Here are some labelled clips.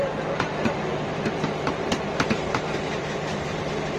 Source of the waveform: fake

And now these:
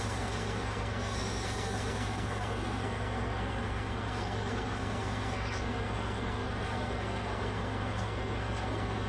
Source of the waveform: fake